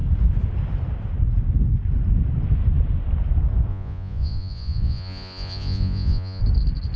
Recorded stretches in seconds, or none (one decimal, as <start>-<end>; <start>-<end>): 0.0-3.7; 6.4-7.0